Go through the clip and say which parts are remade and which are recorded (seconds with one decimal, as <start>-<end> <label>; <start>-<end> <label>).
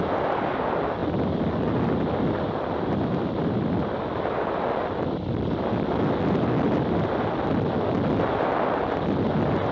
0.0-9.7 recorded